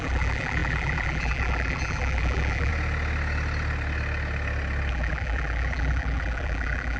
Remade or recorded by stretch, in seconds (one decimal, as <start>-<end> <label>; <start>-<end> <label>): 0.0-2.7 remade; 2.7-4.9 recorded; 4.9-7.0 remade